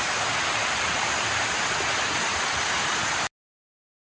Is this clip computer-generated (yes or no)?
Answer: no